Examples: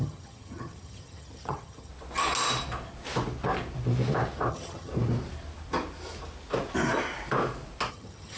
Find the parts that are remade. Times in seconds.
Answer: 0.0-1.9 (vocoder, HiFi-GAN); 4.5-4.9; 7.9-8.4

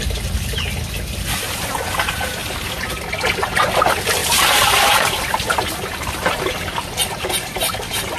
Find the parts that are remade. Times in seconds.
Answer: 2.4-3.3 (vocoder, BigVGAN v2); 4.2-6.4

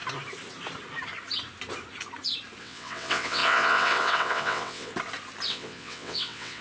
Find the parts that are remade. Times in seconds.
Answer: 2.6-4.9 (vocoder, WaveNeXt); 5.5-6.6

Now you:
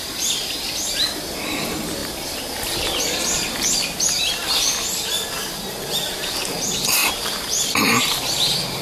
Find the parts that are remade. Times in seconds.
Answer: 2.0-3.0 (vocoder, BigVGAN v2); 7.0-8.0

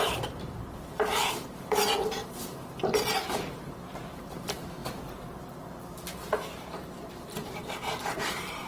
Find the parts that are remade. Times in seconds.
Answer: 0.0-4.8 (vocoder, BigVGAN v2); 6.1-8.7

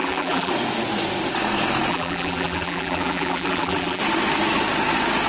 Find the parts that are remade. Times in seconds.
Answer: 0.0-0.5 (vocoder, BigVGAN v2); 1.9-4.0

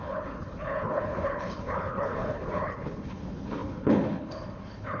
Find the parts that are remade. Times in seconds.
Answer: 0.0-5.0 (codec, HILCodec)